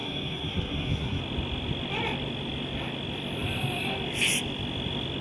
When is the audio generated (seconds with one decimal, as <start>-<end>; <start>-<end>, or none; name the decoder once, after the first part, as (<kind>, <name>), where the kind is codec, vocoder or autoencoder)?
0.0-1.2 (codec, SNAC)